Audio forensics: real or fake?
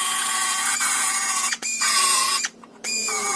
fake